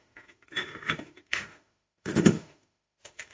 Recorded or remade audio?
remade